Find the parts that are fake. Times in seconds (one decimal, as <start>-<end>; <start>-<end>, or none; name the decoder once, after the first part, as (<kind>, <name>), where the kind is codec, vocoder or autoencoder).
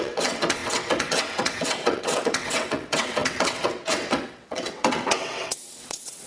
0.0-6.3 (vocoder, WaveNeXt)